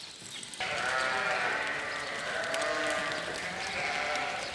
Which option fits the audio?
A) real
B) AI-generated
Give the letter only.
A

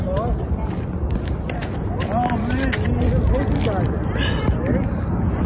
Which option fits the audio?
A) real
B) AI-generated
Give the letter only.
A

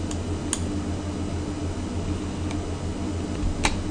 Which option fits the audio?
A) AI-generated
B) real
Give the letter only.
B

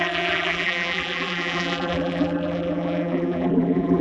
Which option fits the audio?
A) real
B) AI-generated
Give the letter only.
B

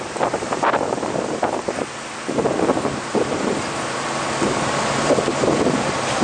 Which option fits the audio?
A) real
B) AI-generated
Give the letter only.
B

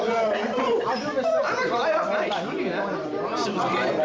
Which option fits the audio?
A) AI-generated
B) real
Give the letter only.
A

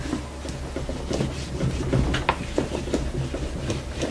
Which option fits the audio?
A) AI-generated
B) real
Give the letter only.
B